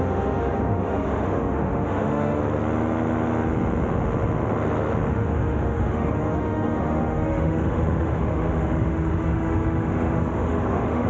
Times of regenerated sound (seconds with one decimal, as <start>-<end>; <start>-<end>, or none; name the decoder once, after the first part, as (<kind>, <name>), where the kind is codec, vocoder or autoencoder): 0.0-2.4 (autoencoder, DAC-VAE); 5.1-11.1